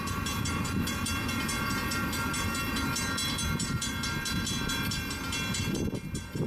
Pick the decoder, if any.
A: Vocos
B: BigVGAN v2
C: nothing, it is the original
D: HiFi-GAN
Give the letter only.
C